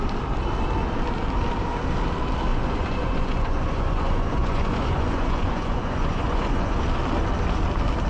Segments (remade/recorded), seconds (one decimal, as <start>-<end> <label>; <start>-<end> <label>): 0.0-2.5 recorded; 2.5-6.8 remade; 6.8-8.1 recorded